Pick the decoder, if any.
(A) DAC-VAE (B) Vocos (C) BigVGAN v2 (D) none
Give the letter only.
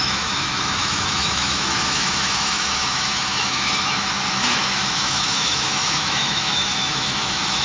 A